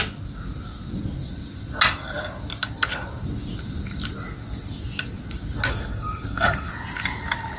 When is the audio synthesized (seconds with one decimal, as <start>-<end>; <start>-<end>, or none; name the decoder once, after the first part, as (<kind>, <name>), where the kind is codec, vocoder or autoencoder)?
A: 5.7-6.7 (codec, SNAC)